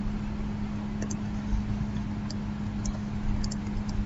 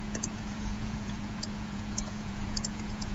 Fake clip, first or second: second